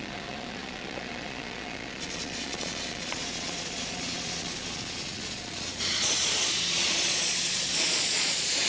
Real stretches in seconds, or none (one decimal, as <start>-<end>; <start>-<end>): none